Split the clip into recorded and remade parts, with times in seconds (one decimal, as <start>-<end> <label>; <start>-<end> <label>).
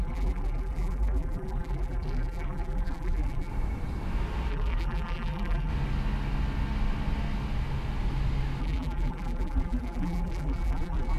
0.0-3.5 remade; 3.5-4.5 recorded; 4.5-5.7 remade; 5.7-8.6 recorded; 8.6-11.2 remade